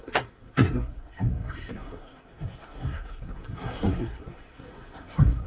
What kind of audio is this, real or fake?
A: fake